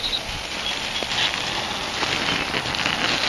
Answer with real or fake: real